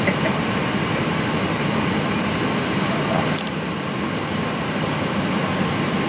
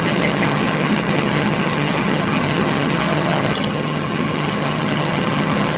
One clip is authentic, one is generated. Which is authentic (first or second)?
first